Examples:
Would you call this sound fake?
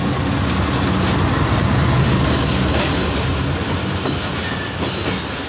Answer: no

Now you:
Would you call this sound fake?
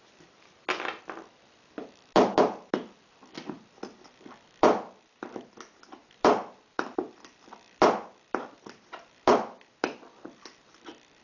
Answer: no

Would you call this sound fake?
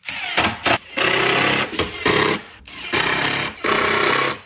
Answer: no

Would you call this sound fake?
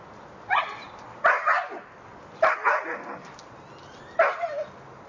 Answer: no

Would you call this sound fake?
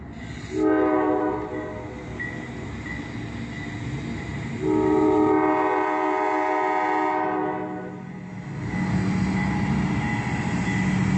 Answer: no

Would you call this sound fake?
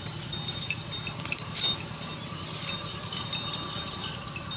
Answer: no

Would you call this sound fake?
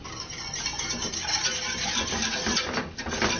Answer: no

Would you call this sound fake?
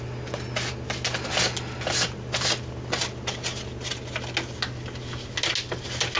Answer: no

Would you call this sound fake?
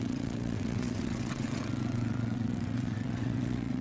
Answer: yes